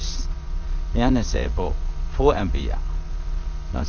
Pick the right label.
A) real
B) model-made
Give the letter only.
B